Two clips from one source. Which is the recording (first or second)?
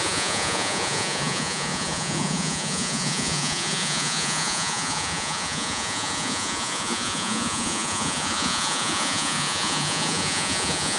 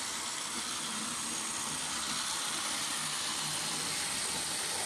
second